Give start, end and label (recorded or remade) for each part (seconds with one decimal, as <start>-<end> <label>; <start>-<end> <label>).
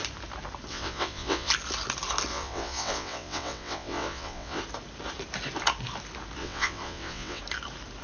0.0-0.7 recorded; 0.7-1.5 remade; 1.5-2.3 recorded; 2.3-4.6 remade; 4.6-6.4 recorded; 6.4-7.4 remade; 7.4-8.0 recorded